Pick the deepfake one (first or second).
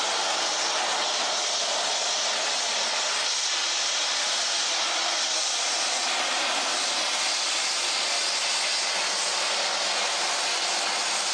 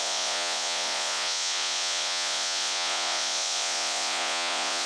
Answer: second